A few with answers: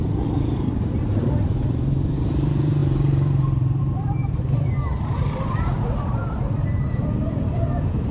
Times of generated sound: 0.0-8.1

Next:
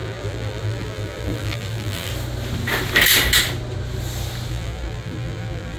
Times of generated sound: 0.0-2.1; 4.5-5.8

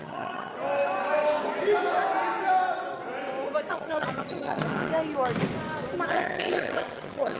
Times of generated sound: 0.0-0.5; 3.7-4.9; 6.1-7.4

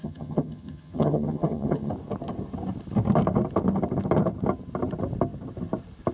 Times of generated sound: 0.0-1.9

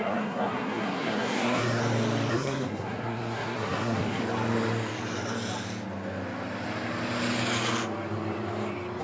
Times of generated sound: 0.0-1.8; 2.3-4.2

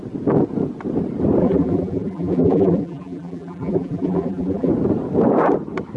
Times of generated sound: 1.4-4.7